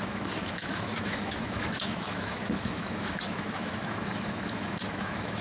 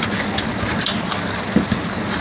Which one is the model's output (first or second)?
first